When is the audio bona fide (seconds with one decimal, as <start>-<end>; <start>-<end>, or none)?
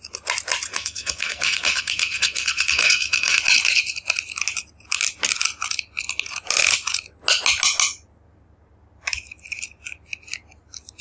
0.0-0.7; 3.4-11.0